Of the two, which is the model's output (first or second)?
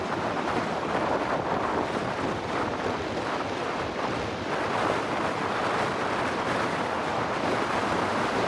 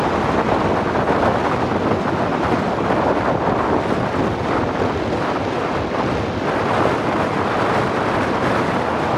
first